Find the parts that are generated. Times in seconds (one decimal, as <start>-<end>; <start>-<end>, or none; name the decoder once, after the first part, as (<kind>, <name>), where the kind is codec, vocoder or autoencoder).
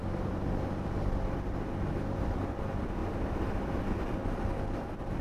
none